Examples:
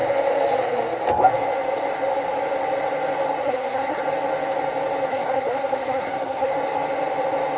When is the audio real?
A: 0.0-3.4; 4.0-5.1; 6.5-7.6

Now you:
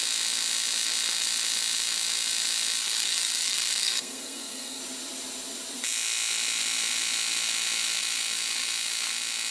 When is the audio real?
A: 0.0-2.8; 4.8-9.5

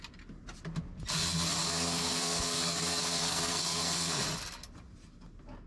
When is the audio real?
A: 0.0-1.6; 4.2-5.7

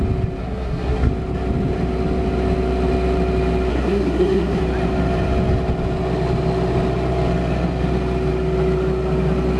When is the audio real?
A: 0.0-0.4; 1.1-3.7; 4.6-9.6

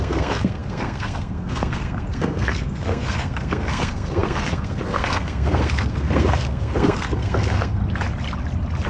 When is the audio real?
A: 7.8-8.9

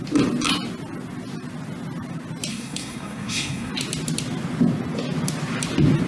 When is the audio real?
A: 0.0-2.5; 3.7-6.1

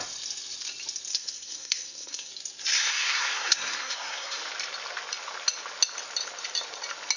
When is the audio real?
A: 0.0-1.1; 2.3-2.7; 4.4-7.2